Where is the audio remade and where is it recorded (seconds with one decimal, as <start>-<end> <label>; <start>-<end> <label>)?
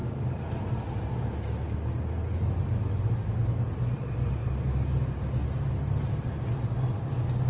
0.0-7.5 recorded